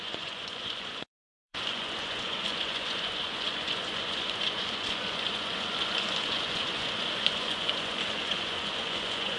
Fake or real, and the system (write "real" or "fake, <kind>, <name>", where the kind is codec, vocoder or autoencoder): fake, vocoder, Vocos